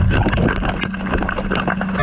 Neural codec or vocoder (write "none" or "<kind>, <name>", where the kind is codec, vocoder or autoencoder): none